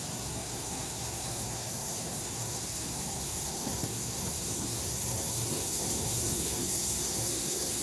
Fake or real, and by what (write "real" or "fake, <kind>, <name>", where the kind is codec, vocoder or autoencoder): fake, codec, SNAC